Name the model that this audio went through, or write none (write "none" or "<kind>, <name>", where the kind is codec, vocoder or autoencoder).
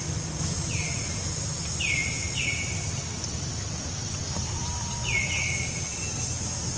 none